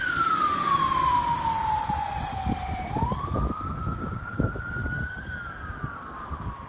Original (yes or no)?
yes